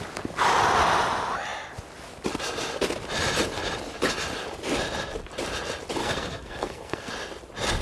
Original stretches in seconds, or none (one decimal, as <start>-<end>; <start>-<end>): 0.0-6.0; 7.1-7.8